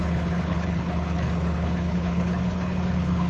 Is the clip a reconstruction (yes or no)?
yes